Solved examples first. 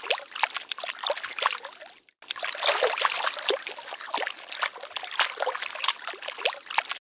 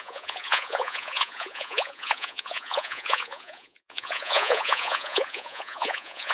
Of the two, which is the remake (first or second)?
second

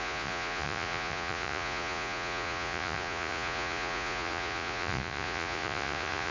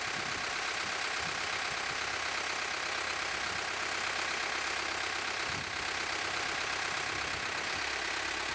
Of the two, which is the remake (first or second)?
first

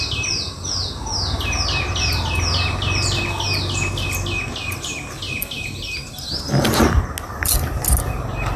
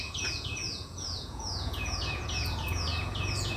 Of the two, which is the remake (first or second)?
second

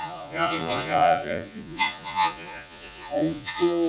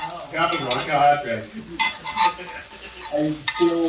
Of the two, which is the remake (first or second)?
first